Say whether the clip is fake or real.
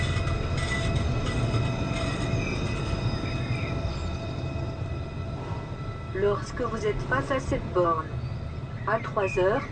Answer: real